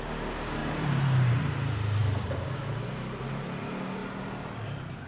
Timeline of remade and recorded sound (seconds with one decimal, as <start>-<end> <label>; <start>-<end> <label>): 0.0-0.6 recorded; 0.6-1.5 remade; 1.5-5.1 recorded